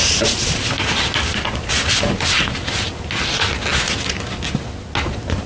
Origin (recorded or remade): recorded